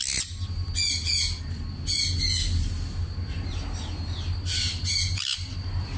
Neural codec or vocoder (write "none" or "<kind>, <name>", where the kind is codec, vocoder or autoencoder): none